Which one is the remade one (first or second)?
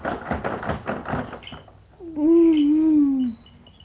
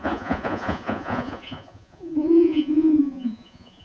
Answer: second